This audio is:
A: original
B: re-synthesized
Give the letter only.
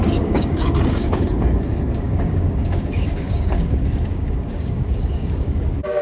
B